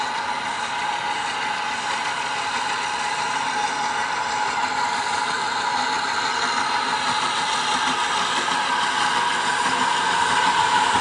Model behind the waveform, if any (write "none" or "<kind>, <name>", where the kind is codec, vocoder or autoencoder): none